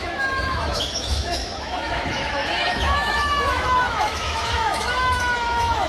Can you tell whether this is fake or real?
fake